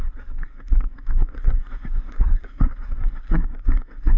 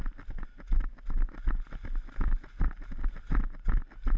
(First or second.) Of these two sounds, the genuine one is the second